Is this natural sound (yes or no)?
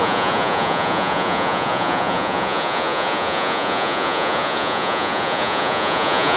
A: no